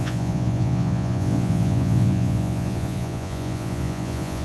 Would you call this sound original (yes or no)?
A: no